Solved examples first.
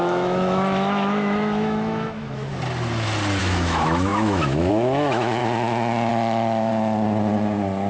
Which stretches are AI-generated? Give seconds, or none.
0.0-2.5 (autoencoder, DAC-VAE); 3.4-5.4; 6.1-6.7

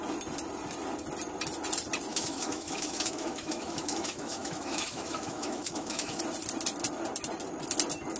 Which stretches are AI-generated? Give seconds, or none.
2.1-6.2 (autoencoder, DAC-VAE)

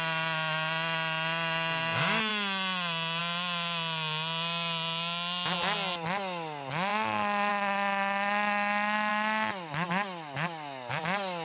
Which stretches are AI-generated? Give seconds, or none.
none

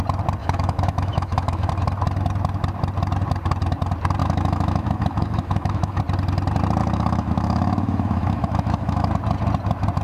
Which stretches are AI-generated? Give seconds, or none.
0.4-1.7 (autoencoder, DAC-VAE); 4.2-6.0; 6.8-9.1